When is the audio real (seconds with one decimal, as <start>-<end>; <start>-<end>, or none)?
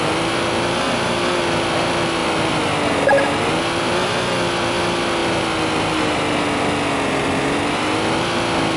0.0-8.8